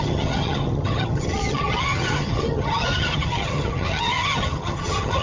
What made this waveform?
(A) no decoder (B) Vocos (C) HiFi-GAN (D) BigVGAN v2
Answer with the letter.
C